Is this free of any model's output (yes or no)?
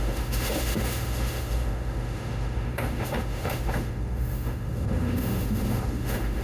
no